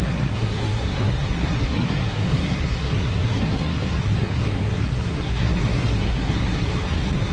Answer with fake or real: fake